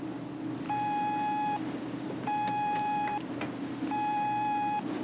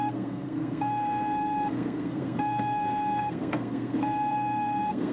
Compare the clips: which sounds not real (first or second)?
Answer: second